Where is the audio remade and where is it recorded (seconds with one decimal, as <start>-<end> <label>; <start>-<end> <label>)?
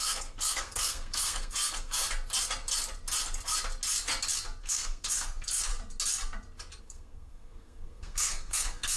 0.0-2.0 remade; 2.0-4.6 recorded; 4.6-5.7 remade; 5.7-6.8 recorded; 6.8-9.0 remade